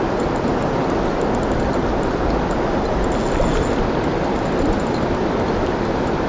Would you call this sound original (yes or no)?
yes